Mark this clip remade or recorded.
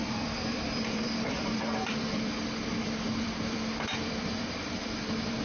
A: remade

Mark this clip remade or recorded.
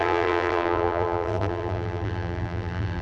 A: remade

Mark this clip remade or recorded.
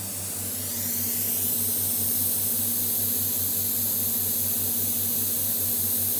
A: recorded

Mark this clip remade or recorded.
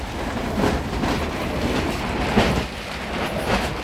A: recorded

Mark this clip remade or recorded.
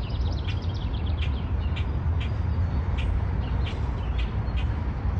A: recorded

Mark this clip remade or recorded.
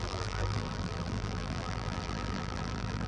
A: remade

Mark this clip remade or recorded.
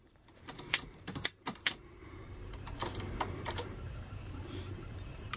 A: remade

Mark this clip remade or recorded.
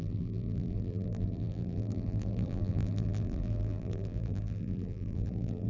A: remade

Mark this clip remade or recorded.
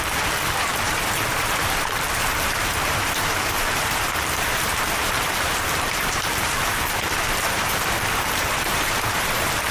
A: remade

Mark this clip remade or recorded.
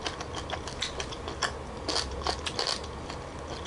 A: recorded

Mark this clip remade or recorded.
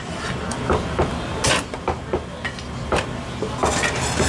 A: recorded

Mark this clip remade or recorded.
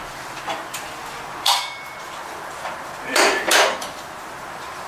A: remade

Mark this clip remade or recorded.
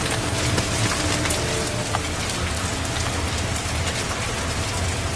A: recorded